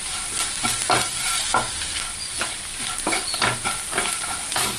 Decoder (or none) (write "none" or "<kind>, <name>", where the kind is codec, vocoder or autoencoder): none